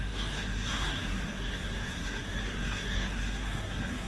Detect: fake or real fake